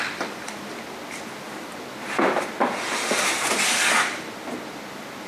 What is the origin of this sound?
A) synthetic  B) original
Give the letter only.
B